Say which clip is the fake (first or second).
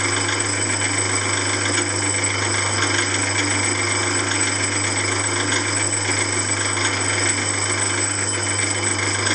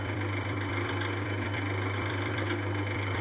second